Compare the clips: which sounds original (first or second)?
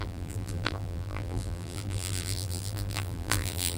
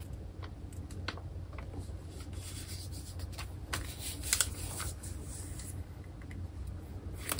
second